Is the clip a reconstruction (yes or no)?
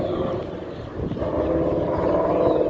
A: no